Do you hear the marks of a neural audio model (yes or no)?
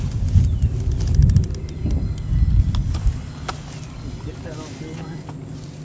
no